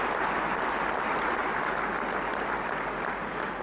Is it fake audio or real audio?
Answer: real